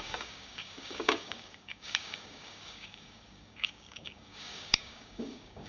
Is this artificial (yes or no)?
yes